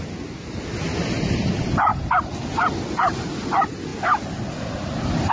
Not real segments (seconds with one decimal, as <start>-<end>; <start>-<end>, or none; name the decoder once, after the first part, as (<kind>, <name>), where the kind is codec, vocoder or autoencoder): none